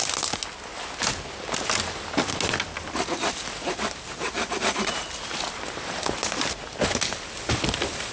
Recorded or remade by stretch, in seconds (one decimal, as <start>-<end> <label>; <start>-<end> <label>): 0.0-8.1 recorded